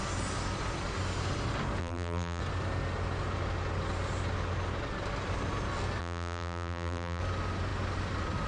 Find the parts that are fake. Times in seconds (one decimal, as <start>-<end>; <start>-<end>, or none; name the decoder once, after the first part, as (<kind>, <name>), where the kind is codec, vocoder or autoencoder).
1.8-2.4 (vocoder, BigVGAN v2); 6.0-7.2